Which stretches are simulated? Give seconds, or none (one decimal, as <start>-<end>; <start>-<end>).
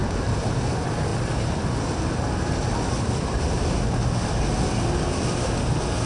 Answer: none